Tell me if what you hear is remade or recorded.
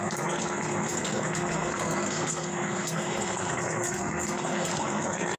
remade